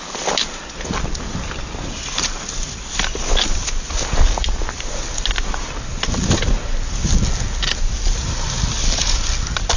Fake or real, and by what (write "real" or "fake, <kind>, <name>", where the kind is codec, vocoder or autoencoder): real